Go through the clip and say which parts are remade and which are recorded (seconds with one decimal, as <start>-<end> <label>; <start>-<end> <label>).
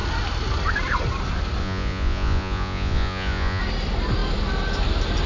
0.0-1.6 recorded; 1.6-3.6 remade; 3.6-5.3 recorded